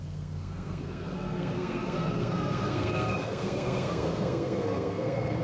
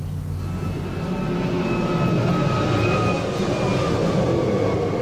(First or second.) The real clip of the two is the second